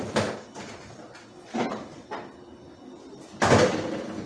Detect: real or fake real